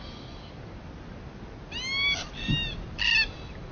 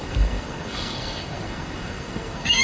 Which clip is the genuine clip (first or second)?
first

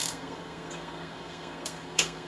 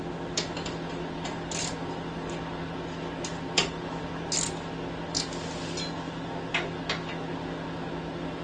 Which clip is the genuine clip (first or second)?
second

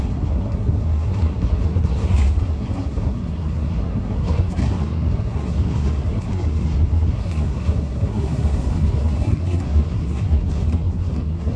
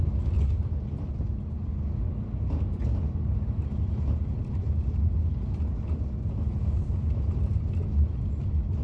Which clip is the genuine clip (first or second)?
second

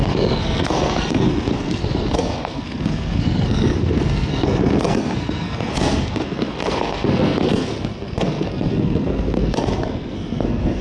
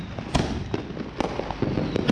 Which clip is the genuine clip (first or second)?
second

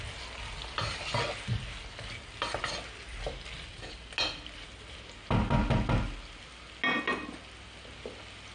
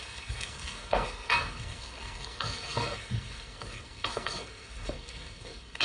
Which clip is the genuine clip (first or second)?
first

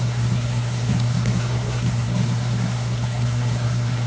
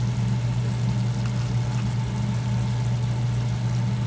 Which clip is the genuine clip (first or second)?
second